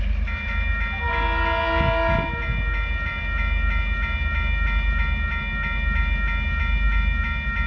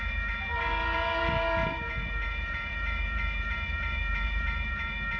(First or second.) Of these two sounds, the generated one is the second